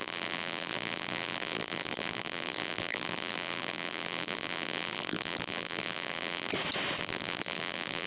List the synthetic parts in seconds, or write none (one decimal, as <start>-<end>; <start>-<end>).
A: 0.0-6.5; 7.0-8.1

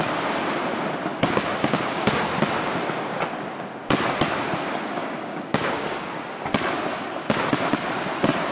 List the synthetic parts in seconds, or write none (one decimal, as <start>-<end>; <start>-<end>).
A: 1.1-2.1; 5.0-6.3

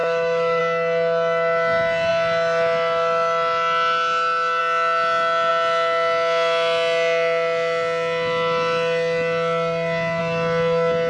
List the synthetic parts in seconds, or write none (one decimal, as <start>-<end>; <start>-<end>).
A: 0.0-0.6